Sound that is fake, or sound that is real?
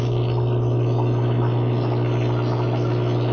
real